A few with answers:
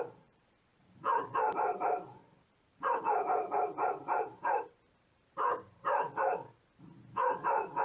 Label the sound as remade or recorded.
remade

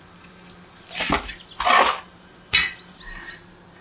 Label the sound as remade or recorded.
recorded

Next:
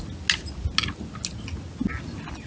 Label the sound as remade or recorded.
recorded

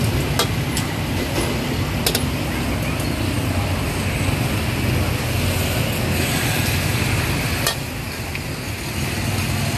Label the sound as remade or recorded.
recorded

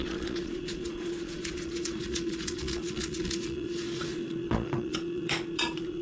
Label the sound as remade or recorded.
remade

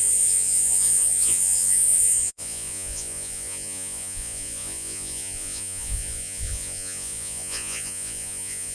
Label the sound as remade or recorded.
remade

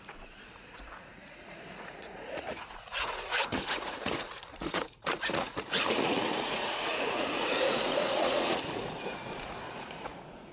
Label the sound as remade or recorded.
remade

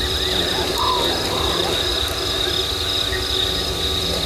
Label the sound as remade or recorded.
recorded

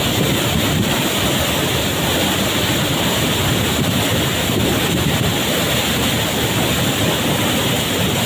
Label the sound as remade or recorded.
remade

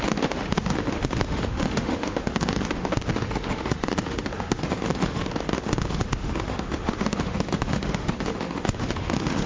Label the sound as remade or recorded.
remade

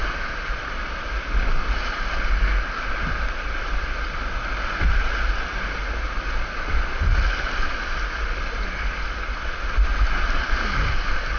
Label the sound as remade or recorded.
recorded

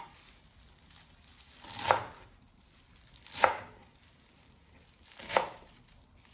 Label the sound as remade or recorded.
recorded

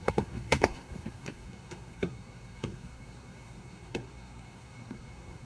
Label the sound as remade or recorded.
remade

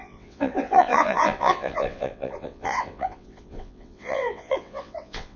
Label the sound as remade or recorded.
remade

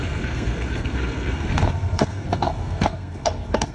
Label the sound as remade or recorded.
remade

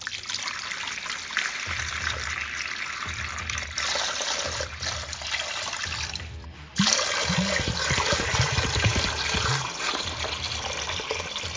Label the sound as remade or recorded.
recorded